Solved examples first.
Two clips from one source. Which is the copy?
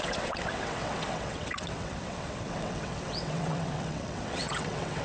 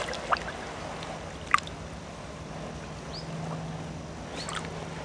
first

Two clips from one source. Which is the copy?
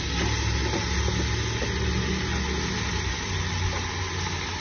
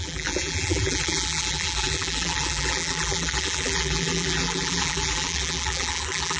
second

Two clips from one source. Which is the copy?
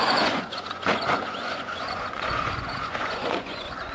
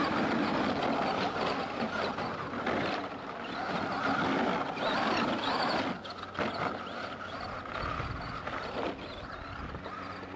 first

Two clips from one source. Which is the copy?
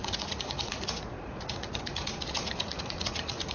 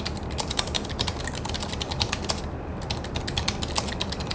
first